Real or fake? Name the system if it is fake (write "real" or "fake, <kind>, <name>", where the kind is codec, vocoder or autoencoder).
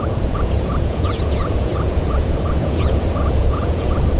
fake, vocoder, Vocos